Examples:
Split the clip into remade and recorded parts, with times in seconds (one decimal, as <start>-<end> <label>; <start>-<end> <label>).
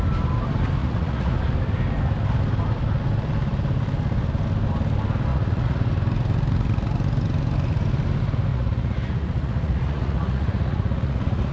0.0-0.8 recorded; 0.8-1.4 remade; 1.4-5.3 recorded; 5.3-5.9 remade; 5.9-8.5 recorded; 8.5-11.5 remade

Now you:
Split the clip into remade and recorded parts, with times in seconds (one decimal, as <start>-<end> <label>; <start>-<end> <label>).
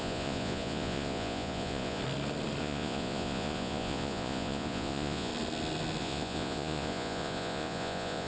0.0-2.0 remade; 2.0-2.6 recorded; 2.6-5.3 remade; 5.3-6.0 recorded; 6.0-8.3 remade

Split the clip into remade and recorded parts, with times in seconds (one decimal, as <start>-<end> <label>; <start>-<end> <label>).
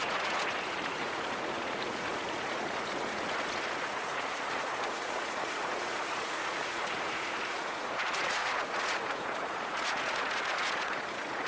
0.0-11.5 remade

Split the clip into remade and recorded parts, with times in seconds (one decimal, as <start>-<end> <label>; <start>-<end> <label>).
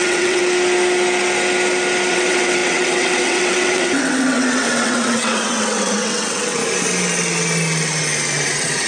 0.0-0.4 remade; 0.4-2.1 recorded; 2.1-6.6 remade; 6.6-8.5 recorded; 8.5-8.9 remade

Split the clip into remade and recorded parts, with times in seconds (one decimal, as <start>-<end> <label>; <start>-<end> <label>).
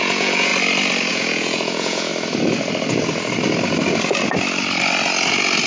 0.0-0.5 remade; 0.5-1.1 recorded; 1.1-2.1 remade; 2.1-5.7 recorded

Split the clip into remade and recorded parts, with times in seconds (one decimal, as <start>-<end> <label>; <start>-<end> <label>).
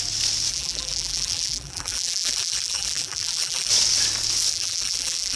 0.0-0.5 recorded; 0.5-3.7 remade; 3.7-4.5 recorded; 4.5-5.4 remade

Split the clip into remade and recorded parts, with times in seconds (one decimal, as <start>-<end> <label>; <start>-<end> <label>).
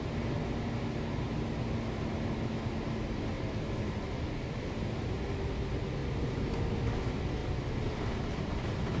0.0-6.0 recorded; 6.0-6.6 remade; 6.6-9.0 recorded